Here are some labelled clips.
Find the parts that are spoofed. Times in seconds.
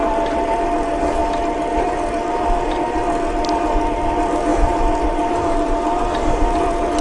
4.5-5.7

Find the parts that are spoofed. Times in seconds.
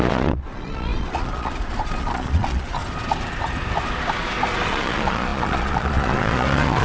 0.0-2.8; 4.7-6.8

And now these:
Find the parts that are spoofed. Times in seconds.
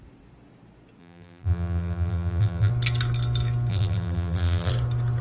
1.0-2.7; 3.7-4.7